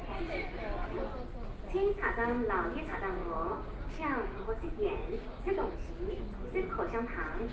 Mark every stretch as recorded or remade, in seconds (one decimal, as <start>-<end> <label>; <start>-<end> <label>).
0.0-3.2 recorded; 3.2-5.9 remade; 5.9-7.5 recorded